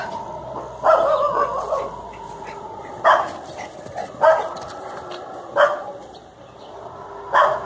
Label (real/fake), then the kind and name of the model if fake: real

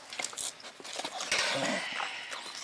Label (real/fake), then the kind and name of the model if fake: real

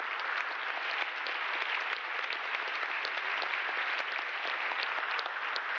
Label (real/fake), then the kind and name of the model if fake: real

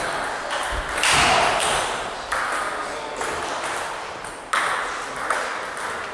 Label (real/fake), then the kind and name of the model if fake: real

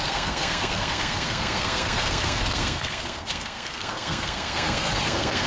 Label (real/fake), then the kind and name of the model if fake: fake, codec, SNAC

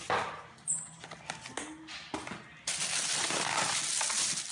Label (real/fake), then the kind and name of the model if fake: real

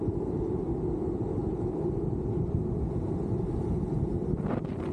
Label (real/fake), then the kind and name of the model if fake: real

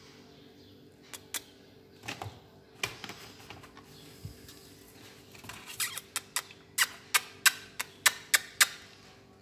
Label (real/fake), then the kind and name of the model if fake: real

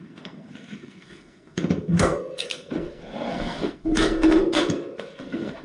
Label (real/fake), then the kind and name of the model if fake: fake, codec, SNAC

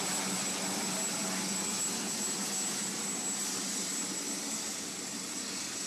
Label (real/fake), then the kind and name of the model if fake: real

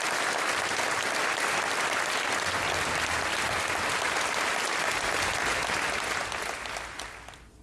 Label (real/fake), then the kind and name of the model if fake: real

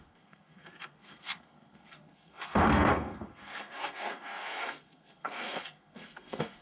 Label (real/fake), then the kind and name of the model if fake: fake, codec, SNAC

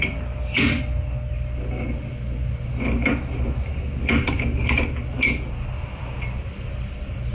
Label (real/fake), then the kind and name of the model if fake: real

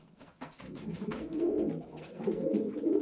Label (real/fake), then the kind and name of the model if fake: fake, codec, SNAC